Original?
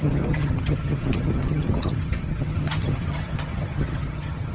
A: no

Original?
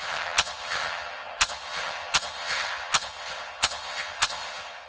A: no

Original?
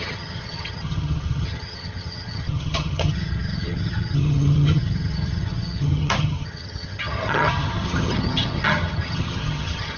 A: no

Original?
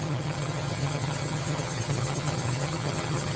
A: no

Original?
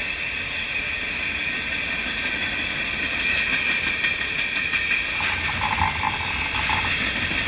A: yes